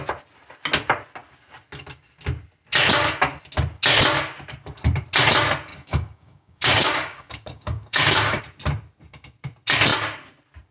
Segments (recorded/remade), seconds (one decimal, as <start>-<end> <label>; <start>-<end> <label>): 0.0-5.7 recorded; 5.7-8.4 remade; 8.4-10.7 recorded